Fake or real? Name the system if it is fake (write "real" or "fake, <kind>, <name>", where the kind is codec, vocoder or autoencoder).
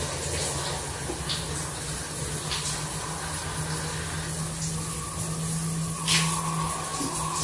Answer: real